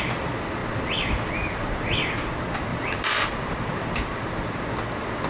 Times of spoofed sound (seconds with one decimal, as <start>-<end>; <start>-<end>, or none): 2.7-4.2